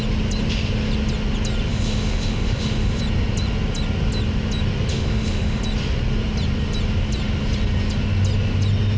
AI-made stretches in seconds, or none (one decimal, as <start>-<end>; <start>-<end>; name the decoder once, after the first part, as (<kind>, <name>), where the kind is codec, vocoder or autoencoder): 1.7-3.0 (autoencoder, DAC-VAE); 4.9-5.6